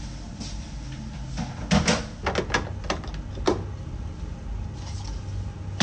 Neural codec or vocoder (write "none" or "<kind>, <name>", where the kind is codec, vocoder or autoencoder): none